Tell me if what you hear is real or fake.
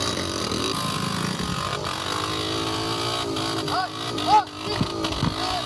real